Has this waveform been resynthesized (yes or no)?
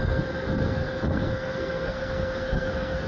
yes